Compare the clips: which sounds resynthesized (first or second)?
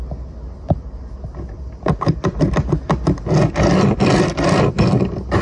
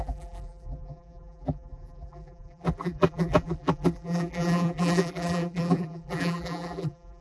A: second